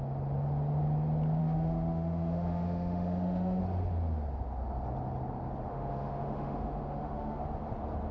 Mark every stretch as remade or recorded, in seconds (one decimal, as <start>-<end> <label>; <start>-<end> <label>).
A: 0.0-1.4 recorded; 1.4-3.6 remade; 3.6-5.7 recorded; 5.7-7.4 remade; 7.4-8.1 recorded